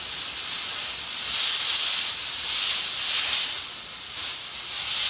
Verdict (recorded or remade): recorded